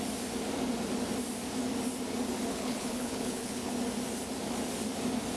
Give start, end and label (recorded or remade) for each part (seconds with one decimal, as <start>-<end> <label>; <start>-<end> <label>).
0.0-2.5 recorded; 2.5-3.7 remade; 3.7-5.4 recorded